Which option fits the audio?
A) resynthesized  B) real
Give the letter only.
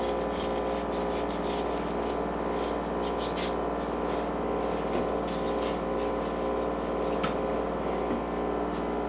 B